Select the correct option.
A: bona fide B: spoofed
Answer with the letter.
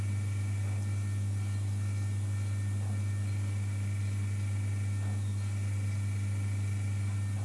A